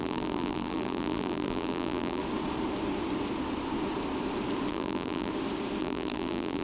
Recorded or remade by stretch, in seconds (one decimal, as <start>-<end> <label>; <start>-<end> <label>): 0.0-2.2 remade; 2.2-4.7 recorded; 4.7-5.3 remade; 5.3-5.8 recorded; 5.8-6.6 remade